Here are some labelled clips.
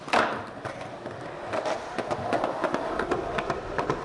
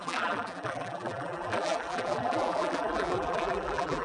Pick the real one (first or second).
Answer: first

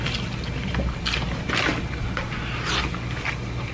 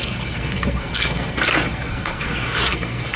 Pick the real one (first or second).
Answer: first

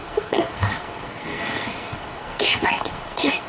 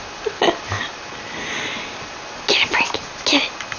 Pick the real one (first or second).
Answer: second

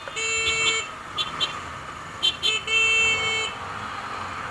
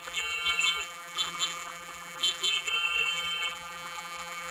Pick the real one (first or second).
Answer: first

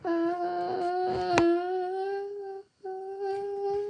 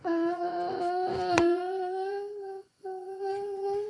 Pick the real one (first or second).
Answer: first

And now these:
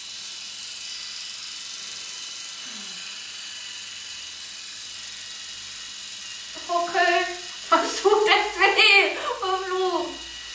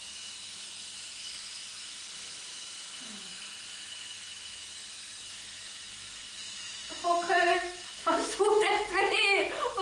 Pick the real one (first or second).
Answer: first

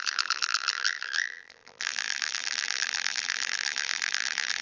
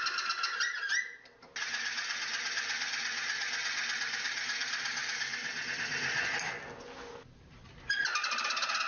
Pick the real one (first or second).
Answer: second